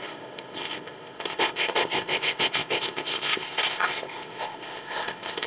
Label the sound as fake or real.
fake